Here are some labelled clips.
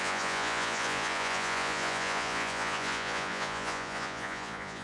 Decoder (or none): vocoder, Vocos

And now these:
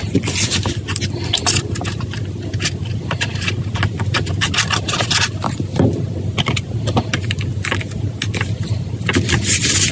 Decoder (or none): none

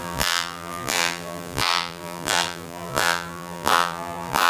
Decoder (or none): vocoder, BigVGAN v2